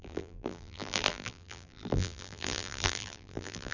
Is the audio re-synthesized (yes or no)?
yes